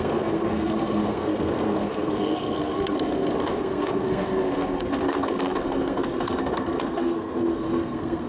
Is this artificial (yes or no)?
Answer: yes